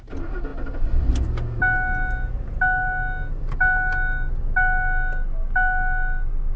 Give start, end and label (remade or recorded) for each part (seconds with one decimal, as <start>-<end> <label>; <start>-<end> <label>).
0.0-6.6 recorded